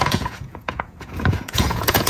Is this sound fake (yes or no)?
yes